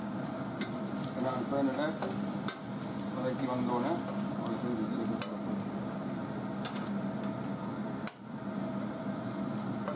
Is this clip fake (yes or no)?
no